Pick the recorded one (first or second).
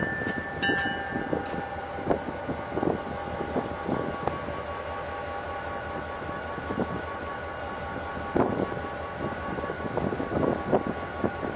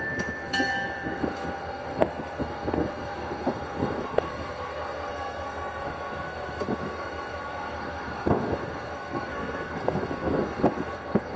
first